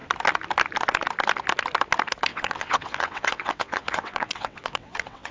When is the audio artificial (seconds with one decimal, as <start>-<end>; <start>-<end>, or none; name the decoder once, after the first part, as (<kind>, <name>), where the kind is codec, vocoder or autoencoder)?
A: 2.3-5.3 (vocoder, WaveNeXt)

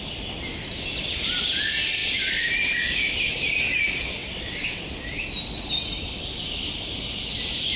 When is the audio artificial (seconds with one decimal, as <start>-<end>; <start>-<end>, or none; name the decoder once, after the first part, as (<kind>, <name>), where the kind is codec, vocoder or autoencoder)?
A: 4.2-4.8 (vocoder, WaveNeXt)

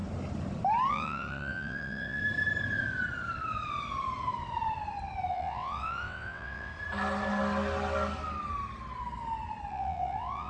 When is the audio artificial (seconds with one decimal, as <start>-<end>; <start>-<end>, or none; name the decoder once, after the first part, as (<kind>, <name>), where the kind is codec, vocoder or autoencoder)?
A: 0.9-2.2 (vocoder, WaveNeXt); 5.3-6.7; 9.7-10.5

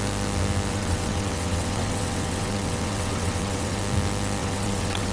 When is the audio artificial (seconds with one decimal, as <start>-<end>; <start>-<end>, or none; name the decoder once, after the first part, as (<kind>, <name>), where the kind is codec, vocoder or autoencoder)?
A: 0.7-3.8 (vocoder, WaveNeXt); 4.4-5.1

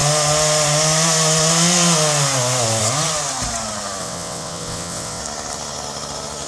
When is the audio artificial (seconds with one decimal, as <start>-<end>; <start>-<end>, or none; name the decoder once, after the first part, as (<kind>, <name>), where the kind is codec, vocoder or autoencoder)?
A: 4.0-5.2 (vocoder, WaveNeXt)

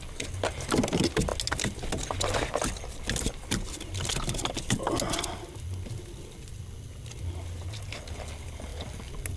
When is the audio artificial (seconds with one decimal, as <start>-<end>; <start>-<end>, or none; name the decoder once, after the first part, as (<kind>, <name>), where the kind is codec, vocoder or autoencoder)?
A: none